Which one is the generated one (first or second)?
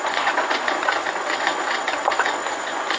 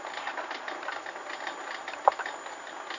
first